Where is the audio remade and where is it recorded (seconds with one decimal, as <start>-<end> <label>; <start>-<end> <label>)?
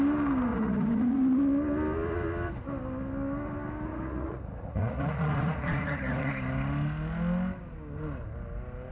0.0-0.5 recorded; 0.5-1.2 remade; 1.2-3.9 recorded; 3.9-6.3 remade; 6.3-8.9 recorded